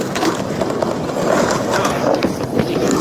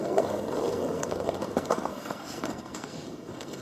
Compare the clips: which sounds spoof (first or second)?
second